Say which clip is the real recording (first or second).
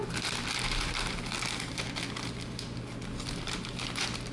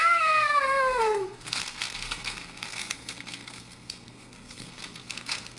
first